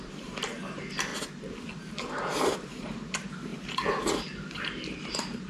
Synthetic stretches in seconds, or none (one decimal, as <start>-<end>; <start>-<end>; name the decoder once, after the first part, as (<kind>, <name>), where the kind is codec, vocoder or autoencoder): 0.0-1.1 (vocoder, BigVGAN v2); 1.7-3.5; 4.1-5.5